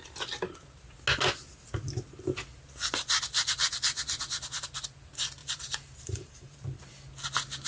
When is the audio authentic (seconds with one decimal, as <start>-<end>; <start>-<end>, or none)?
0.0-5.4; 6.6-7.7